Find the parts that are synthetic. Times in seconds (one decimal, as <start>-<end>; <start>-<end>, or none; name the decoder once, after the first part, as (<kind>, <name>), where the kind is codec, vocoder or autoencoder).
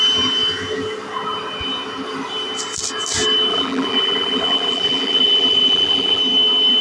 3.5-6.2 (vocoder, BigVGAN v2)